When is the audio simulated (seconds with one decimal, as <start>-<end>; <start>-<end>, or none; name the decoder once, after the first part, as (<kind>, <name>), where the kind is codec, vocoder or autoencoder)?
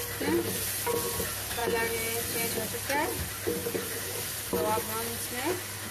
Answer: 3.6-4.5 (vocoder, BigVGAN v2)